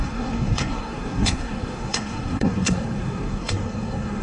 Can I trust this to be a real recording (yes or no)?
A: no